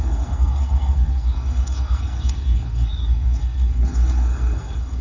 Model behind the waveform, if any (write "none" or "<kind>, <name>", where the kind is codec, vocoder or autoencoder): codec, SNAC